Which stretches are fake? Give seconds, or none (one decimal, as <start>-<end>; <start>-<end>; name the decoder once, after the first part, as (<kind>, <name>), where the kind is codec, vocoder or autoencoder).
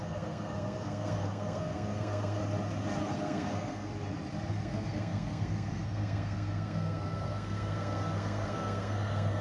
0.0-2.4 (codec, SNAC); 3.0-3.9; 4.5-9.4